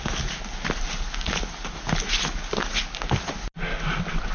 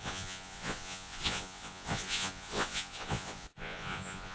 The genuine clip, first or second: first